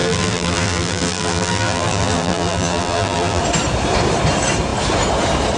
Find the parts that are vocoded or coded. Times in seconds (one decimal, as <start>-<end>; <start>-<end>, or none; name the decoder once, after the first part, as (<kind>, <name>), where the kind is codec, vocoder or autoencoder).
0.0-3.4 (vocoder, BigVGAN v2)